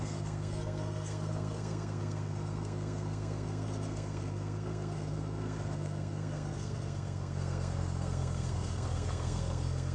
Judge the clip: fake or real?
fake